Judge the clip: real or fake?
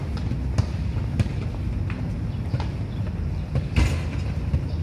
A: real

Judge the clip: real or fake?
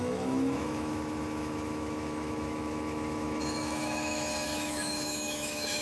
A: fake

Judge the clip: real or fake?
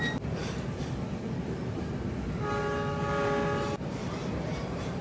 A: real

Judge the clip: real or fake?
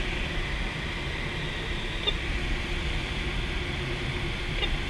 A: real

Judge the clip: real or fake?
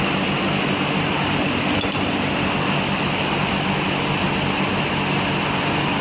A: real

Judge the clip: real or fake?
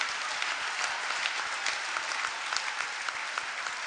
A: real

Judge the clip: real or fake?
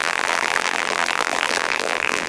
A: fake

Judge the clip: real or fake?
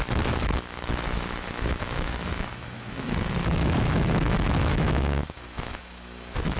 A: fake